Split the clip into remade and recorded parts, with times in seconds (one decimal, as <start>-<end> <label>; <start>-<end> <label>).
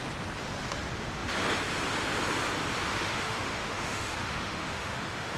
0.0-2.9 recorded; 2.9-5.4 remade